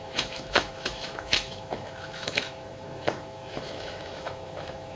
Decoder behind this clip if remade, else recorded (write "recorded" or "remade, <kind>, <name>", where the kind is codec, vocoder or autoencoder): remade, autoencoder, DAC-VAE